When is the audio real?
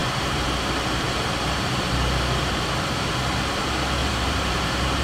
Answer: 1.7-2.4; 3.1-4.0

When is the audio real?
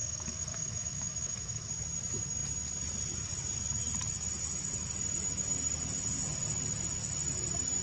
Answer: 1.7-7.8